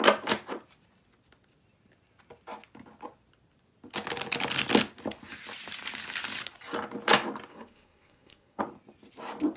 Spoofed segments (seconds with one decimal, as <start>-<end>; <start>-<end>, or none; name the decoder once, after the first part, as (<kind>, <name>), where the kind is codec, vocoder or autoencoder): 7.5-8.6 (codec, SNAC)